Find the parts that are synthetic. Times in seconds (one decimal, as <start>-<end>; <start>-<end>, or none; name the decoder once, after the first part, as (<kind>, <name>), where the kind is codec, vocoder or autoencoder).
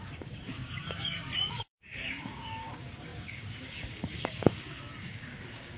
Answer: 0.0-5.8 (codec, DAC)